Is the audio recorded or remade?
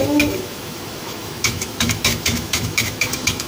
remade